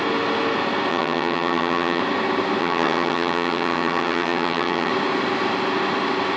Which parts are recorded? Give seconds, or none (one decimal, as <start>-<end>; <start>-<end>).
0.0-0.9; 2.0-2.6; 4.9-6.4